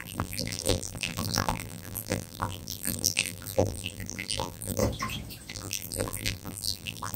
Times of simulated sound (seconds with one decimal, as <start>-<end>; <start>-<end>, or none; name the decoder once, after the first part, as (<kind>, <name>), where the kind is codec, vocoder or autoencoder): 0.0-4.8 (vocoder, BigVGAN v2); 5.5-7.2